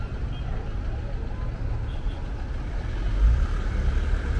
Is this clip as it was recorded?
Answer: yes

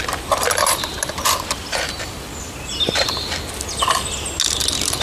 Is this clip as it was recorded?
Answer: yes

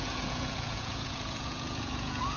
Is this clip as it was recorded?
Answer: no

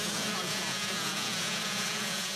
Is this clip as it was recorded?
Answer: no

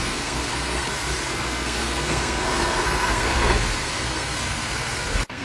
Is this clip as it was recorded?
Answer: no